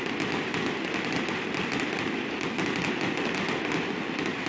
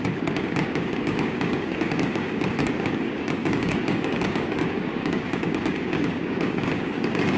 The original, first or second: first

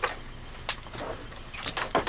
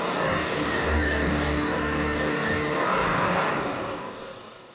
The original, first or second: first